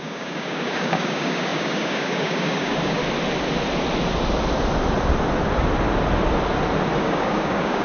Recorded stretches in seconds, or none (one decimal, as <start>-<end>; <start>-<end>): 3.0-7.0